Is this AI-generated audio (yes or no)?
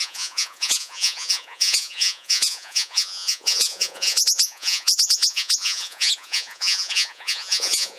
yes